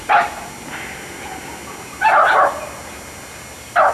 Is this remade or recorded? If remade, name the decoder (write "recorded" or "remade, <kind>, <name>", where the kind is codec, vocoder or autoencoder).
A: recorded